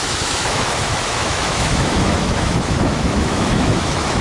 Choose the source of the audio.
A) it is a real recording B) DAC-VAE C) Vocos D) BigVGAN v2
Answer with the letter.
B